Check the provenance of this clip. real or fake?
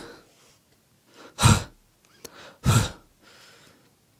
real